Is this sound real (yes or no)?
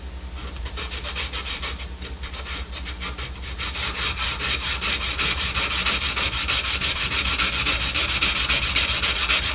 yes